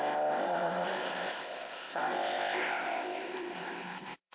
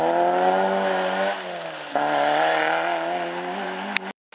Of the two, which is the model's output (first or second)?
first